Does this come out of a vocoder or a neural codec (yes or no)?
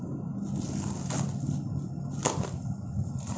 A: no